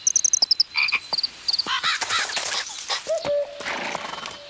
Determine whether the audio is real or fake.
real